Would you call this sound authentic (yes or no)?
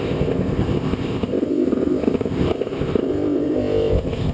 no